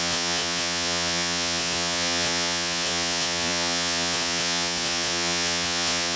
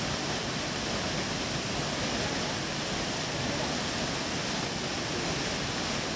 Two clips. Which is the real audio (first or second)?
second